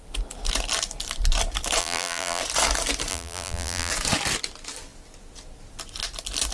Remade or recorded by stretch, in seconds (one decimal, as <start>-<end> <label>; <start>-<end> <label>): 0.0-1.8 recorded; 1.8-2.4 remade; 2.4-3.1 recorded; 3.1-3.9 remade; 3.9-6.5 recorded